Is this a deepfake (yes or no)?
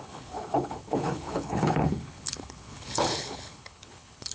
yes